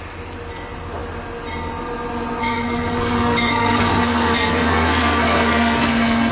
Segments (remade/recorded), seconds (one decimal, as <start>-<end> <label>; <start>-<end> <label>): 0.0-2.4 recorded; 2.4-6.3 remade